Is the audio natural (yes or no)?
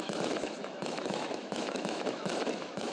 no